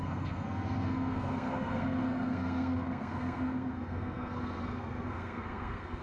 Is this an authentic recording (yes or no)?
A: no